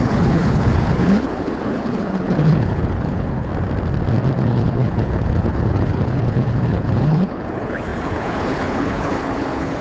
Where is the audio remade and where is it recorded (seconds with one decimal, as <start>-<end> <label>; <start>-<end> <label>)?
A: 0.0-3.5 remade; 3.5-4.4 recorded; 4.4-9.8 remade